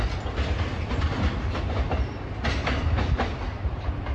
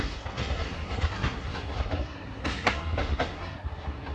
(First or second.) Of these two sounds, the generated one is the second